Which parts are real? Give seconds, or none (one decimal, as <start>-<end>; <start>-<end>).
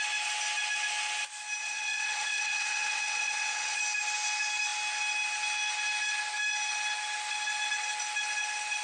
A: 0.0-1.6; 3.8-8.8